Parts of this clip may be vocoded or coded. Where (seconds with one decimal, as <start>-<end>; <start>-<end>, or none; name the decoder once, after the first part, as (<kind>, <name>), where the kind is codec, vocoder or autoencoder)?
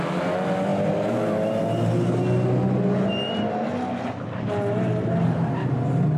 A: none